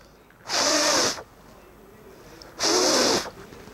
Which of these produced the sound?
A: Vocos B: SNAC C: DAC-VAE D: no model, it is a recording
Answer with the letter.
D